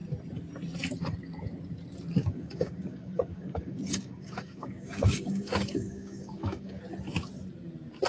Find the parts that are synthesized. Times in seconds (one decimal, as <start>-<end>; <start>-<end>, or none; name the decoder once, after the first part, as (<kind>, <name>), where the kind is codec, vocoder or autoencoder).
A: 2.2-6.8 (codec, DAC)